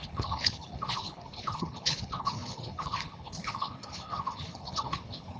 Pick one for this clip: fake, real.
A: fake